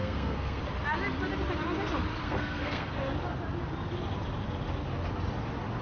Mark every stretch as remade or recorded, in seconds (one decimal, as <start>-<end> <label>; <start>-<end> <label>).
0.0-0.6 remade; 0.6-2.2 recorded; 2.2-2.9 remade; 2.9-5.8 recorded

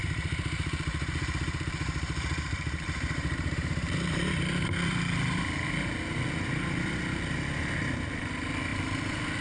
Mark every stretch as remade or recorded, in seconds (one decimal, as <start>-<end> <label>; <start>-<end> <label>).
0.0-4.2 remade; 4.2-9.4 recorded

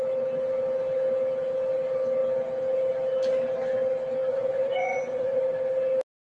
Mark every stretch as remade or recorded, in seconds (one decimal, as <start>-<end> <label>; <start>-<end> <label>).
0.0-4.3 recorded; 4.3-5.4 remade; 5.4-6.4 recorded

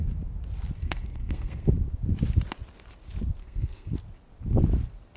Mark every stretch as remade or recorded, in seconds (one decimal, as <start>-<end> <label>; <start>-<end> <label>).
0.0-0.8 recorded; 0.8-1.7 remade; 1.7-3.4 recorded; 3.4-3.9 remade; 3.9-5.2 recorded

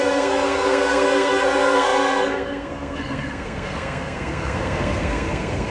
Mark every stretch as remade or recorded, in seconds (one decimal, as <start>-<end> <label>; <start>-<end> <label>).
0.0-5.7 remade

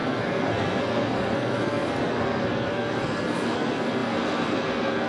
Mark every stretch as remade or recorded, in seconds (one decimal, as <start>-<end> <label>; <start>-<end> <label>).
0.0-5.1 remade

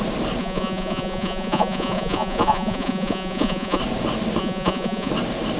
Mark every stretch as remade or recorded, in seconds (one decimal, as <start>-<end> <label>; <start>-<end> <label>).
0.0-0.4 recorded; 0.4-3.8 remade; 3.8-4.4 recorded; 4.4-5.1 remade; 5.1-5.6 recorded

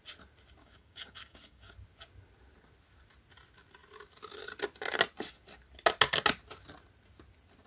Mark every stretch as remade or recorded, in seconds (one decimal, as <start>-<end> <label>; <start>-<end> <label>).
0.0-0.6 recorded; 0.6-1.7 remade; 1.7-7.7 recorded